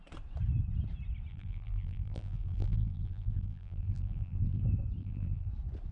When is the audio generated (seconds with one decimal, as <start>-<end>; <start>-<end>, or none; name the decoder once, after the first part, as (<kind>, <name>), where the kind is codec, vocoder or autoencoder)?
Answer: 1.3-4.6 (vocoder, BigVGAN v2); 5.0-5.5